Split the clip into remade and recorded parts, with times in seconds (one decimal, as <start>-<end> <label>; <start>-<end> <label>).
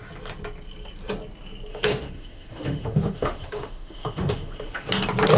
0.0-1.7 recorded; 1.7-4.9 remade; 4.9-5.4 recorded